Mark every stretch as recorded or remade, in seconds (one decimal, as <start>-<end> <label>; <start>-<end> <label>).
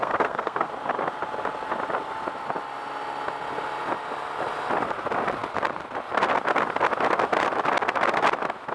0.0-0.7 remade; 0.7-8.7 recorded